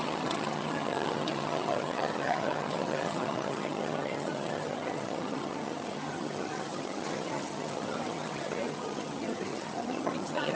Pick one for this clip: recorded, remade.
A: remade